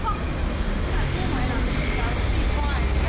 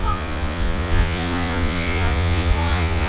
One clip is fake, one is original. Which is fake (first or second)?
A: second